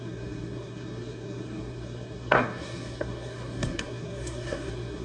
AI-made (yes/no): yes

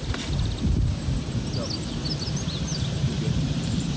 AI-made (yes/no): no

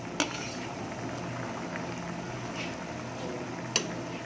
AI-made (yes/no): no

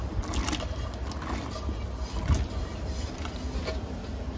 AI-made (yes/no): no